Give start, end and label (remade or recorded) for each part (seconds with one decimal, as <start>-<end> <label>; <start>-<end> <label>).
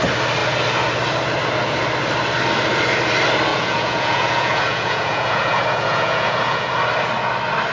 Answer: 0.0-3.5 recorded; 3.5-6.7 remade; 6.7-7.7 recorded